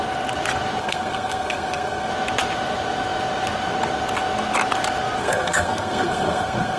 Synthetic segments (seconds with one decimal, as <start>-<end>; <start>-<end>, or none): 0.8-2.1; 5.2-6.8